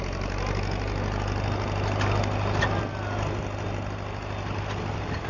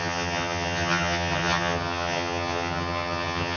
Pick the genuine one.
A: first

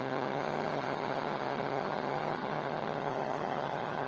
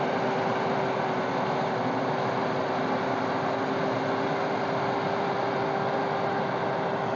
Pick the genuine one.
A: second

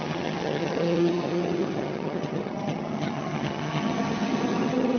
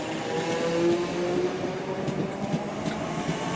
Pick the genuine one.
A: second